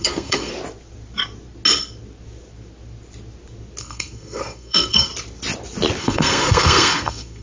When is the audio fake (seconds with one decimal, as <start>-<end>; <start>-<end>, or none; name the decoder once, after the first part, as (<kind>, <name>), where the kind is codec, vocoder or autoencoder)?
0.0-0.5 (codec, SNAC); 3.8-5.1; 6.0-7.4